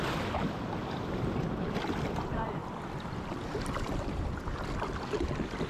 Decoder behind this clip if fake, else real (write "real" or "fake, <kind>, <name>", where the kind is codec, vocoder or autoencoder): fake, vocoder, BigVGAN v2